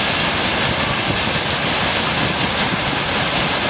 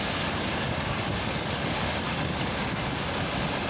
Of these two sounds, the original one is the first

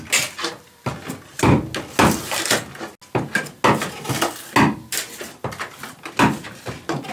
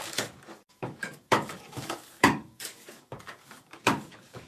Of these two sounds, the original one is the first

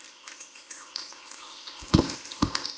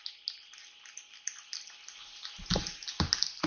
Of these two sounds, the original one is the second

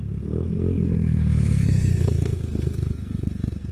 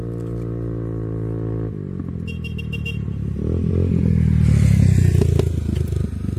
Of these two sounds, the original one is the second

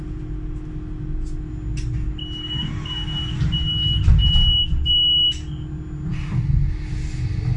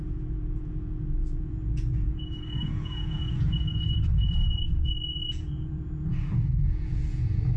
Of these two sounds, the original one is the first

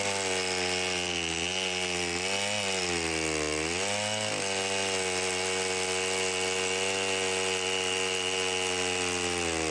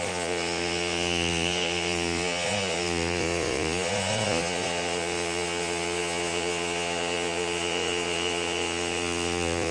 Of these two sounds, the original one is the first